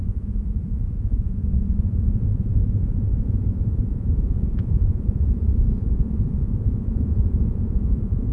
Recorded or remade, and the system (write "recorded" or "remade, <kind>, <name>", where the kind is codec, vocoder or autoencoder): remade, vocoder, Vocos